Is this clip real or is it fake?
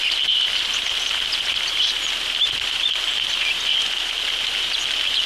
real